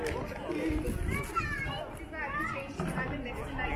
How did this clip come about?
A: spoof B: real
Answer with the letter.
B